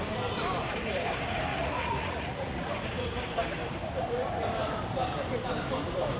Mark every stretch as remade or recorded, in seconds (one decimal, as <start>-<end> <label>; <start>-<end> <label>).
0.0-1.5 recorded; 1.5-2.7 remade; 2.7-6.2 recorded